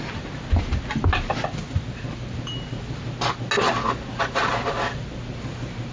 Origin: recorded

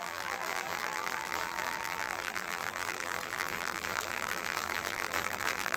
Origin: remade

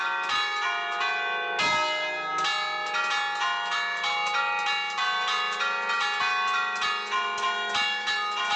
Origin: recorded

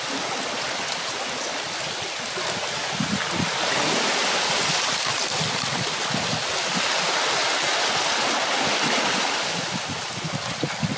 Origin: recorded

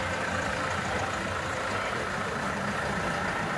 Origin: remade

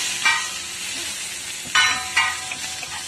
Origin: recorded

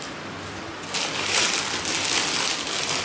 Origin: recorded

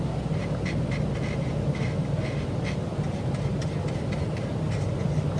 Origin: recorded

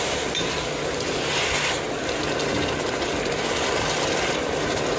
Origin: recorded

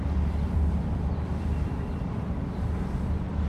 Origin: remade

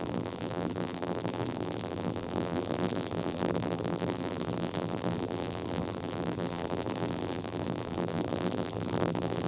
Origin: remade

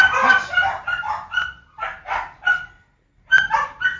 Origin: recorded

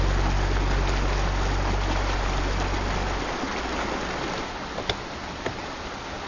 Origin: recorded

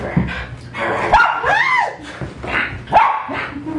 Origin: recorded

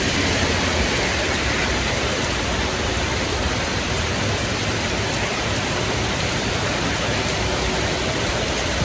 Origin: remade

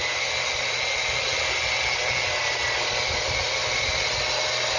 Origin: recorded